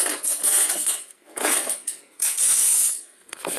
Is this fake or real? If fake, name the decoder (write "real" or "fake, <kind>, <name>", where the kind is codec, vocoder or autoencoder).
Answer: fake, codec, SNAC